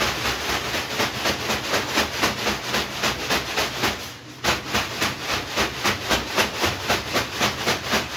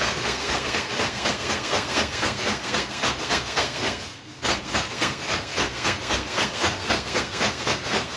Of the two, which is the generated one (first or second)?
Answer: second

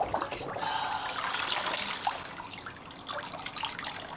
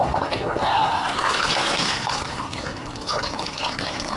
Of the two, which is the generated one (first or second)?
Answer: second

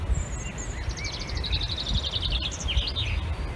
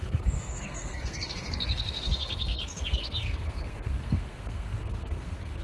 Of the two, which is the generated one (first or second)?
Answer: second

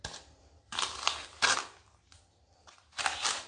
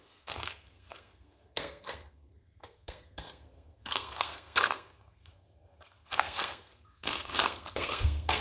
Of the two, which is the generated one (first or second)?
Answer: second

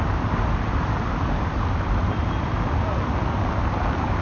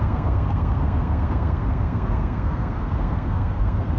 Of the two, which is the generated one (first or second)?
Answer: second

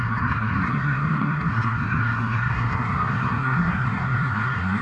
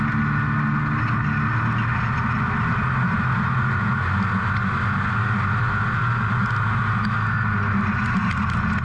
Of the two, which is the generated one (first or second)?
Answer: first